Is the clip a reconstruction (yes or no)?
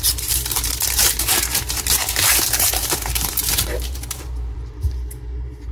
yes